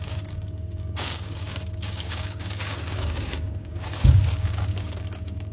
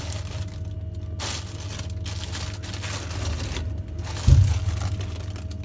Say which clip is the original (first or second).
second